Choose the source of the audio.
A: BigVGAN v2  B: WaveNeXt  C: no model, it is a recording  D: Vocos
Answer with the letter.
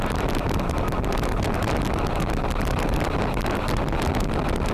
C